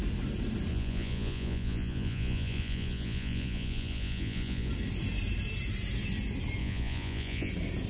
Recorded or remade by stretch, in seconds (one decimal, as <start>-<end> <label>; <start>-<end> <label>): 0.0-0.7 recorded; 0.7-4.7 remade; 4.7-6.6 recorded; 6.6-7.5 remade; 7.5-7.9 recorded